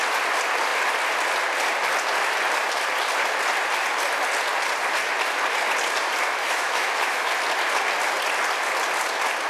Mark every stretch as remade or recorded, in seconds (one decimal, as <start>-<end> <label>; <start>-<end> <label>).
0.0-6.4 recorded; 6.4-7.3 remade; 7.3-9.5 recorded